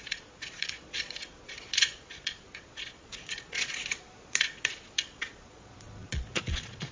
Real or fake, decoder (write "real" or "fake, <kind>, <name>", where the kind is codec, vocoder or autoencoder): fake, vocoder, Vocos